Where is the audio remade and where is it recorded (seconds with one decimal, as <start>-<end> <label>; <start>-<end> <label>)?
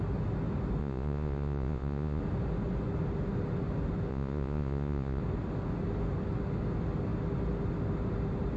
0.0-0.8 recorded; 0.8-2.2 remade; 2.2-4.1 recorded; 4.1-5.2 remade; 5.2-8.6 recorded